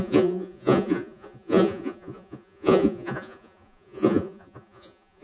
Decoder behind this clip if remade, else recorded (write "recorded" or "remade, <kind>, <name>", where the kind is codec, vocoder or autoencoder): remade, vocoder, Vocos